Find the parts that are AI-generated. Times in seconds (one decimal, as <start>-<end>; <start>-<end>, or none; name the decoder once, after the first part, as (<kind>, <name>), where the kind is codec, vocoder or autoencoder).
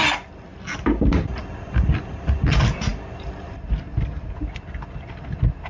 none